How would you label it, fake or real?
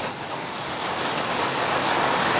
fake